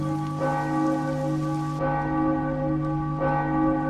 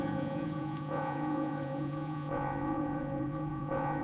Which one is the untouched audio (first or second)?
first